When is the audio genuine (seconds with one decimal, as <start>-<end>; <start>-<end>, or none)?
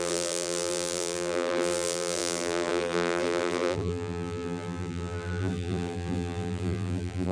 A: none